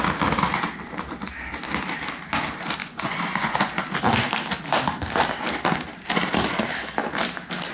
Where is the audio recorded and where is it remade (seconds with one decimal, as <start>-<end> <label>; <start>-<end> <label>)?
0.0-2.8 recorded; 2.8-3.7 remade; 3.7-7.7 recorded